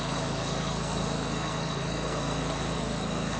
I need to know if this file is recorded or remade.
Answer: remade